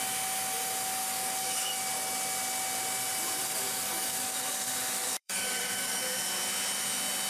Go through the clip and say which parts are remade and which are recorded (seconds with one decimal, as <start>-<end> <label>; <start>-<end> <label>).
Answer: 0.0-1.0 recorded; 1.0-1.8 remade; 1.8-3.4 recorded; 3.4-6.0 remade; 6.0-7.3 recorded